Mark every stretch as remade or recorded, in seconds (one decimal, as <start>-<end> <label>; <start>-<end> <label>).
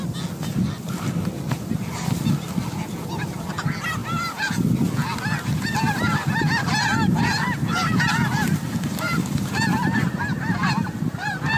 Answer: 0.0-11.6 recorded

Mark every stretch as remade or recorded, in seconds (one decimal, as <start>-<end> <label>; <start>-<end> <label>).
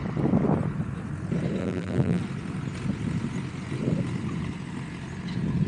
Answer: 0.0-1.6 recorded; 1.6-2.2 remade; 2.2-5.7 recorded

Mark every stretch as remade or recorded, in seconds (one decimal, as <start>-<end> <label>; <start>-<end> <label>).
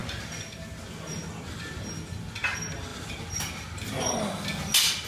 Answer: 0.0-5.1 recorded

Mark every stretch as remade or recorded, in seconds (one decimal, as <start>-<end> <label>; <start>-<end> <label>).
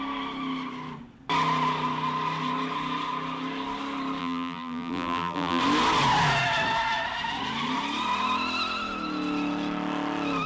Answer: 0.0-4.2 recorded; 4.2-5.6 remade; 5.6-10.5 recorded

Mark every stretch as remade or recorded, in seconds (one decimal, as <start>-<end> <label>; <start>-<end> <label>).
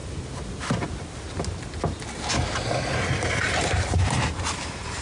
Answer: 0.0-3.0 recorded; 3.0-5.0 remade